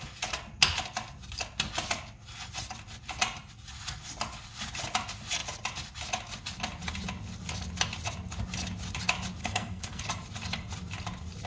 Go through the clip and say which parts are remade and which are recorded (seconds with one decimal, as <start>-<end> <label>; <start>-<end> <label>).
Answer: 0.0-9.4 recorded; 9.4-10.0 remade; 10.0-11.5 recorded